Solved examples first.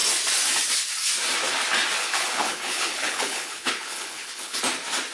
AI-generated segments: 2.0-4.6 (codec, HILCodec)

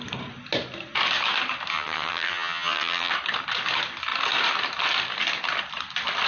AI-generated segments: 1.7-3.1 (vocoder, HiFi-GAN)

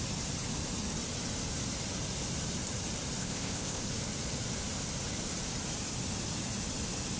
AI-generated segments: 3.2-3.8 (codec, ZipCodec)